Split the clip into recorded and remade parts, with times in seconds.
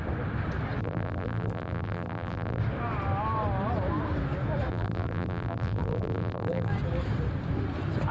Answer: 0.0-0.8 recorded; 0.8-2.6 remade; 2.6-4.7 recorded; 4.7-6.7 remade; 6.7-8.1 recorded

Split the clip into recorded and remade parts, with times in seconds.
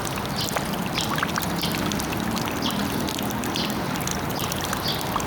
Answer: 0.0-4.1 recorded; 4.1-4.7 remade; 4.7-5.3 recorded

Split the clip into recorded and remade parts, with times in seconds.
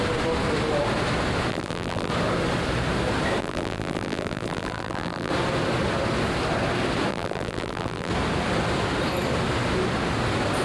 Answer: 0.0-1.5 recorded; 1.5-2.1 remade; 2.1-3.4 recorded; 3.4-5.3 remade; 5.3-7.1 recorded; 7.1-8.1 remade; 8.1-10.6 recorded